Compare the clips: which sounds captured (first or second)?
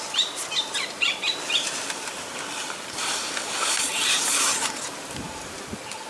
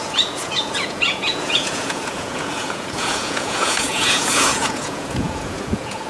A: first